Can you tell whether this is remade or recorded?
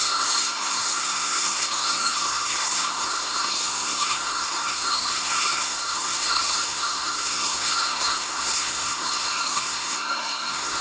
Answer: remade